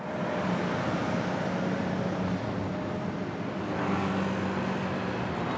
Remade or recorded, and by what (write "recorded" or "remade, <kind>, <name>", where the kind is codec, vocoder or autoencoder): recorded